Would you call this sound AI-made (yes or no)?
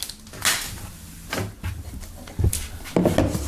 no